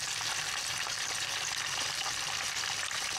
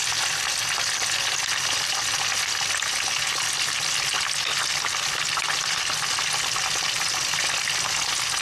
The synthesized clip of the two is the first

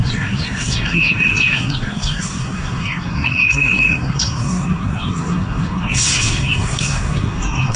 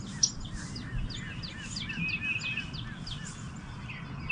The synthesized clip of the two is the first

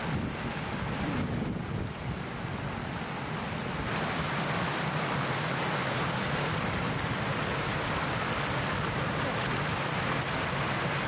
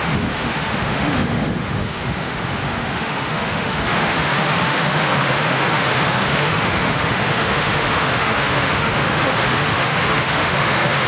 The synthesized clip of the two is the second